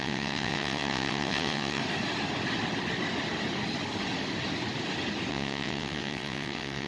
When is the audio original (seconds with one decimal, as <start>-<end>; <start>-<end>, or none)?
1.8-5.3